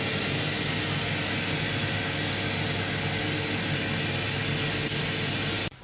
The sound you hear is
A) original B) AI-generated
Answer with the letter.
A